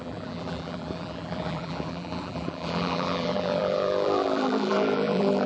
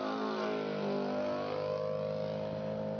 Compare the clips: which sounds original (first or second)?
second